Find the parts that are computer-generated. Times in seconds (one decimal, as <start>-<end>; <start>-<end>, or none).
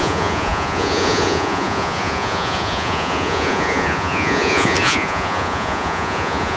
0.0-6.6